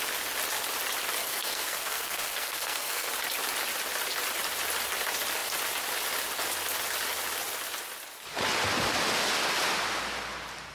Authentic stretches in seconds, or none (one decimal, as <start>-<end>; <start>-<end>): 0.0-1.2; 3.1-10.7